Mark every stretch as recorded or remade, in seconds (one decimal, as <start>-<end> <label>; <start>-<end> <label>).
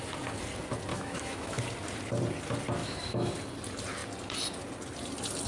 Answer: 0.0-0.9 recorded; 0.9-1.6 remade; 1.6-2.8 recorded; 2.8-3.3 remade; 3.3-5.5 recorded